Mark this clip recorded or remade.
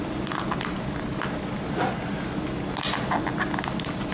recorded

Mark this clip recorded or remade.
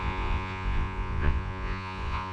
remade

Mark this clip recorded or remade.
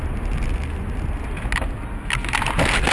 recorded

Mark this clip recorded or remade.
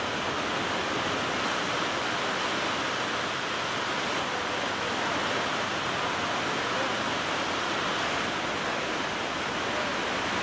recorded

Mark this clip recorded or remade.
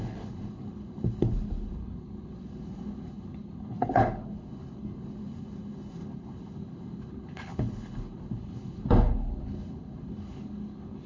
remade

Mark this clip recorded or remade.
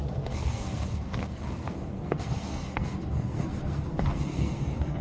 remade